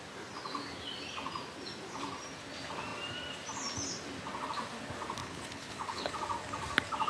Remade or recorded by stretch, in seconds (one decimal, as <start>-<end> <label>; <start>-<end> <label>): 0.0-5.2 recorded; 5.2-6.1 remade; 6.1-7.1 recorded